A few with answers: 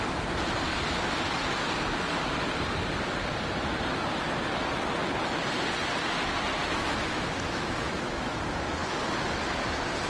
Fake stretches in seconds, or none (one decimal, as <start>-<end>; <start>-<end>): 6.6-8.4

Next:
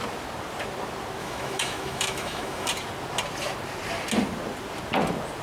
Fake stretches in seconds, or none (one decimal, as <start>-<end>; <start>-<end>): 1.2-2.7

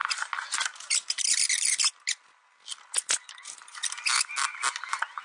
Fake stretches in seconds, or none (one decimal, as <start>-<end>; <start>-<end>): none

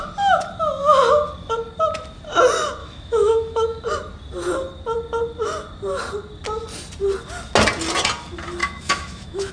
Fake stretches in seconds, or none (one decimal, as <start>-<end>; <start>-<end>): 2.8-3.8; 8.6-9.5

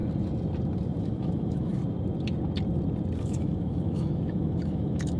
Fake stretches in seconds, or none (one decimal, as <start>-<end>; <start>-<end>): 1.0-1.8; 3.2-5.2

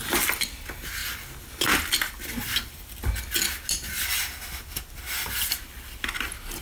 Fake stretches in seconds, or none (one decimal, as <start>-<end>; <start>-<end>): none

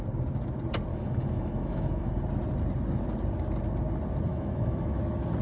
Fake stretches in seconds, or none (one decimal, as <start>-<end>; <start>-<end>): 0.9-2.1; 4.3-5.0

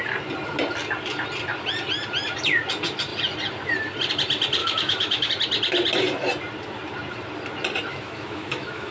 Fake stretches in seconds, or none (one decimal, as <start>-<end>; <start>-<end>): 4.6-5.3; 7.9-8.9